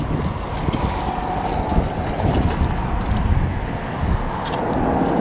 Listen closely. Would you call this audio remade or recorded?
recorded